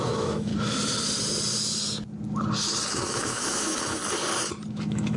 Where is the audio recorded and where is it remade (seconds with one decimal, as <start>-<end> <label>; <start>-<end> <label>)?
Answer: 0.0-0.5 remade; 0.5-2.9 recorded; 2.9-4.0 remade; 4.0-4.7 recorded; 4.7-5.2 remade